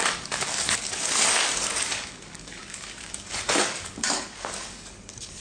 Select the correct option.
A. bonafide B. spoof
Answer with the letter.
B